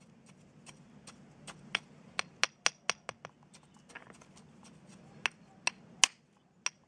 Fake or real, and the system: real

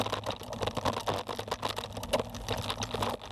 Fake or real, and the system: real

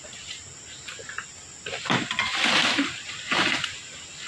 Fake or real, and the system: real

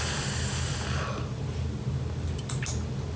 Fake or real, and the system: real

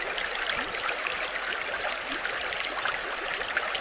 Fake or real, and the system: fake, vocoder, BigVGAN v2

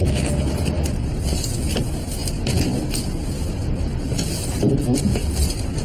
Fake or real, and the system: real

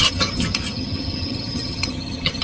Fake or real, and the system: fake, vocoder, HiFi-GAN